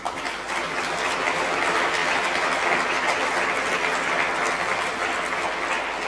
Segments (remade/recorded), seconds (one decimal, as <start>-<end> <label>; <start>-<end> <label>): 0.0-6.1 recorded